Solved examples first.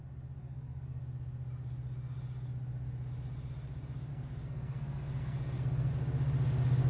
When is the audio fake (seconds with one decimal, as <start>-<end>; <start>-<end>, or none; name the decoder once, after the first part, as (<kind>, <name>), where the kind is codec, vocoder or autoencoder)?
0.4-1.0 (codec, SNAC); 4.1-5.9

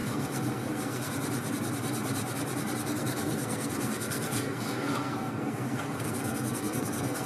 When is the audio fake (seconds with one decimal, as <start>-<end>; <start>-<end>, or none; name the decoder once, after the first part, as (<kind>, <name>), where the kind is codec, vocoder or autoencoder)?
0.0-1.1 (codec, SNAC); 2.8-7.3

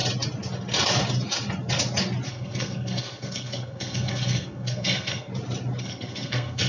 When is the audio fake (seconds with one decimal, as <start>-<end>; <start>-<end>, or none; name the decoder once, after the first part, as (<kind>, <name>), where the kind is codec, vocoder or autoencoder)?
2.3-5.3 (codec, SNAC); 5.8-6.7

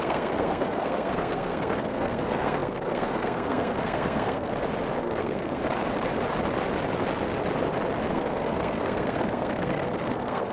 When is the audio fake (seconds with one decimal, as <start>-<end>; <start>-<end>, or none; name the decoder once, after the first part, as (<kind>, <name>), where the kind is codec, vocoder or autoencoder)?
0.0-4.5 (codec, SNAC); 5.0-5.6; 8.1-10.5

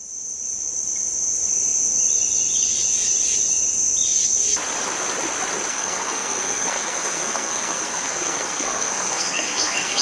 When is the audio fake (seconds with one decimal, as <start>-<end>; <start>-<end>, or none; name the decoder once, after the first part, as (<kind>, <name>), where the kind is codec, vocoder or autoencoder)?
5.7-10.0 (codec, SNAC)